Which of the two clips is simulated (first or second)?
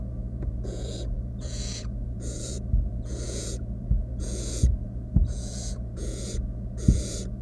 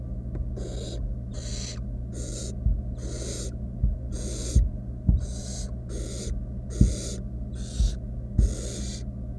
first